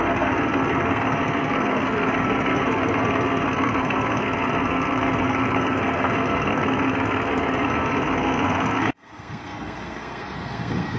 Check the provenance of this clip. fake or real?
fake